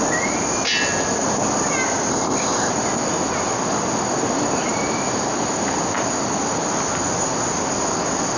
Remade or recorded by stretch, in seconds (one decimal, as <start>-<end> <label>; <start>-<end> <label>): 0.0-2.1 recorded; 2.1-2.7 remade; 2.7-8.4 recorded